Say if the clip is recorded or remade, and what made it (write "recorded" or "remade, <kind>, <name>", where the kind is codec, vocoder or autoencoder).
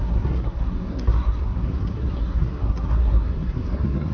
remade, codec, SNAC